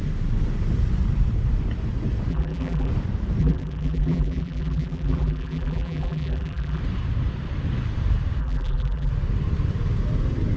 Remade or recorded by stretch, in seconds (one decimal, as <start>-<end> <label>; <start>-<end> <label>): 0.0-2.3 recorded; 2.3-2.9 remade; 2.9-3.4 recorded; 3.4-6.8 remade; 6.8-8.4 recorded; 8.4-9.1 remade; 9.1-10.6 recorded